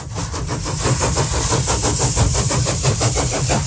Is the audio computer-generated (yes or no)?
yes